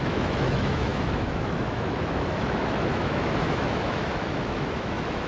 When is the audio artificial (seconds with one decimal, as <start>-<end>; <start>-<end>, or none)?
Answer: 0.0-5.3